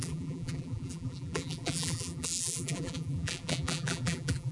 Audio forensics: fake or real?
fake